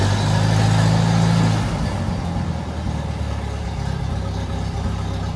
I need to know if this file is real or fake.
real